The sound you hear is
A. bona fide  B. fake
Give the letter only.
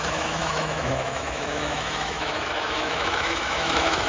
B